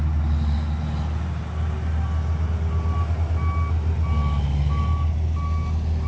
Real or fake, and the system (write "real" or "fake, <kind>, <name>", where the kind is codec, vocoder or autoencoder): real